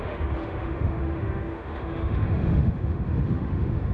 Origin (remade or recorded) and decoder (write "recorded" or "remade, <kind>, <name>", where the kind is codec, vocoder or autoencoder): remade, autoencoder, DAC-VAE